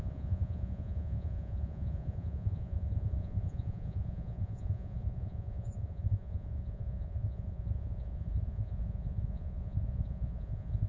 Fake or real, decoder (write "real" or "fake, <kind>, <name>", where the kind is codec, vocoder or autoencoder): fake, vocoder, Vocos